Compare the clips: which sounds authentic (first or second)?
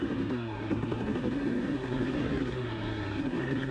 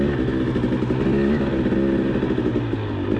second